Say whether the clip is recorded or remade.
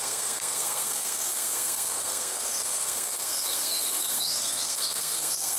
remade